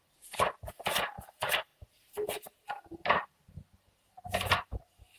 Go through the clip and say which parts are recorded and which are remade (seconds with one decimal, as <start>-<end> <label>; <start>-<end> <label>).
0.0-5.2 recorded